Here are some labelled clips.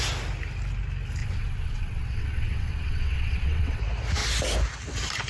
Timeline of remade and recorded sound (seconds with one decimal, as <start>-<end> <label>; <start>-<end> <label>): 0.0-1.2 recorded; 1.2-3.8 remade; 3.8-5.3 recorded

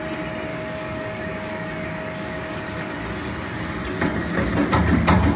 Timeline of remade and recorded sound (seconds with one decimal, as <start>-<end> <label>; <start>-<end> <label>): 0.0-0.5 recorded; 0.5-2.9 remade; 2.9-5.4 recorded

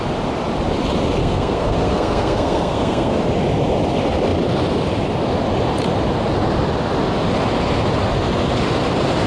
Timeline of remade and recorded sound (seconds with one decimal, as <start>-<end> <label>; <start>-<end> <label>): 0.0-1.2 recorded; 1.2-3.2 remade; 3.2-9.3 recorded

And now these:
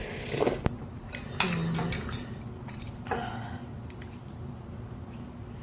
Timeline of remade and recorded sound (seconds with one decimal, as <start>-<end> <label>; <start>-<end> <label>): 0.0-5.6 recorded

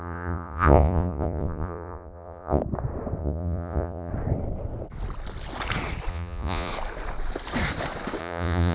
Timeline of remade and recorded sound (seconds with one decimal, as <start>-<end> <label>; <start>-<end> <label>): 0.0-2.6 remade; 2.6-3.2 recorded; 3.2-4.1 remade; 4.1-6.1 recorded; 6.1-6.7 remade; 6.7-8.2 recorded; 8.2-8.7 remade

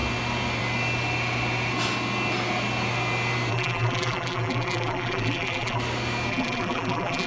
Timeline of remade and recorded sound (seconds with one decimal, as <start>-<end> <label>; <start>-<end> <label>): 0.0-3.5 recorded; 3.5-5.8 remade; 5.8-6.3 recorded; 6.3-7.3 remade

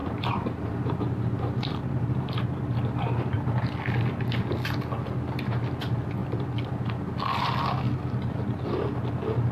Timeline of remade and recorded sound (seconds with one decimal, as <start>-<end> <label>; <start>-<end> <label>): 0.0-1.8 remade; 1.8-9.5 recorded

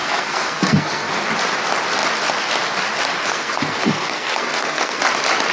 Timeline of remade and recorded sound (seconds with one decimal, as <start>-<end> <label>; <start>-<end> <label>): 0.0-1.1 remade; 1.1-3.2 recorded; 3.2-5.0 remade; 5.0-5.5 recorded